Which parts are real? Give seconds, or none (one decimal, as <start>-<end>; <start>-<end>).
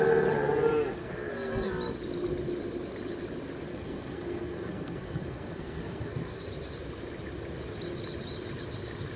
0.0-1.0; 1.7-3.7; 6.4-9.2